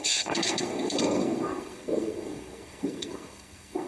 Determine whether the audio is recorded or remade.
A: remade